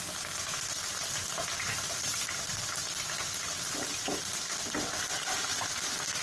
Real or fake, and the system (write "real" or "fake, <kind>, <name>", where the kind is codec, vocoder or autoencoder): real